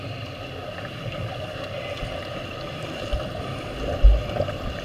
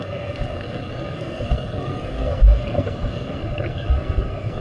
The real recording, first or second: first